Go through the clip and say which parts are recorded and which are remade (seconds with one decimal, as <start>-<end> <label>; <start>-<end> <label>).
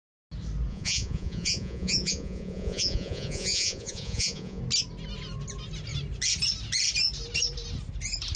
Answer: 0.0-0.7 recorded; 0.7-4.6 remade; 4.6-8.4 recorded